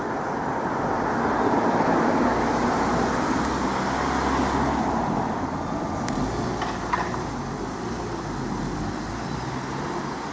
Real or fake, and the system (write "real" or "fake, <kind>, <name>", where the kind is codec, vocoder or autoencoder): real